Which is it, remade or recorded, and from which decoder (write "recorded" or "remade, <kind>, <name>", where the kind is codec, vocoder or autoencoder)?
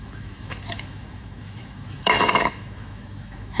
remade, autoencoder, DAC-VAE